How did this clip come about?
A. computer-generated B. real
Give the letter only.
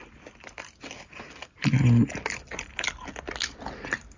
B